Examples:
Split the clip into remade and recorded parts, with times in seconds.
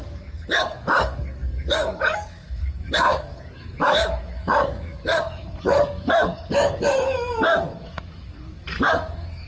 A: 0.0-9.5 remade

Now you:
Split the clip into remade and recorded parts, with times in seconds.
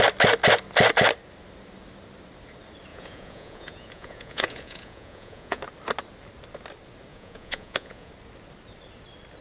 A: 0.0-2.9 recorded; 2.9-5.6 remade; 5.6-7.1 recorded; 7.1-8.1 remade; 8.1-9.4 recorded